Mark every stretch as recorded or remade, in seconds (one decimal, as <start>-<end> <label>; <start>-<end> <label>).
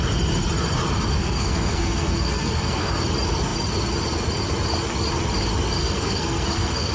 0.0-1.2 recorded; 1.2-2.9 remade; 2.9-5.8 recorded; 5.8-6.9 remade